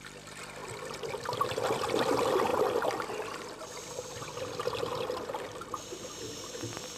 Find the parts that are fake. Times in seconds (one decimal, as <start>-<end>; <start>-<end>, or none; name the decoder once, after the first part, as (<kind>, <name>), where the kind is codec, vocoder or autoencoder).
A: none